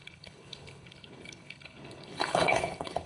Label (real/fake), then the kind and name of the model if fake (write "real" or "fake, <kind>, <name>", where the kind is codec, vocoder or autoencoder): fake, codec, HILCodec